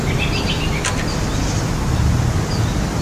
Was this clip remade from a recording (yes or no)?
no